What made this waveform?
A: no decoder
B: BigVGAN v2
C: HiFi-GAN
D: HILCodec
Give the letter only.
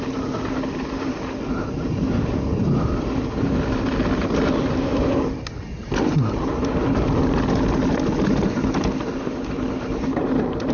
A